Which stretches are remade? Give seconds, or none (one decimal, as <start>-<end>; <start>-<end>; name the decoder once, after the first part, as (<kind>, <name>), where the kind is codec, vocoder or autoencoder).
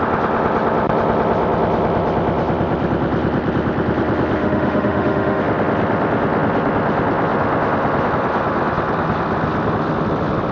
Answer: 4.4-5.4 (autoencoder, DAC-VAE)